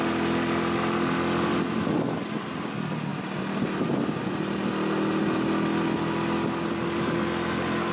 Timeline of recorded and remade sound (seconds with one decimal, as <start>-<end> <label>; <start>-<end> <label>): 0.0-7.9 recorded